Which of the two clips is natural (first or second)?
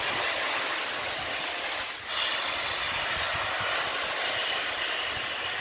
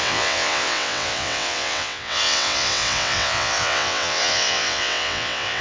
first